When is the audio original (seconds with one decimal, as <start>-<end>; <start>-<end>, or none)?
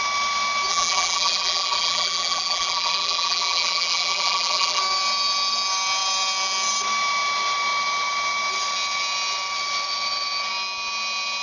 0.0-0.7; 4.8-11.4